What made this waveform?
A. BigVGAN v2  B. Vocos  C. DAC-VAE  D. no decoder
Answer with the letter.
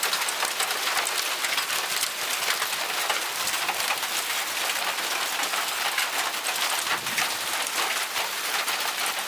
D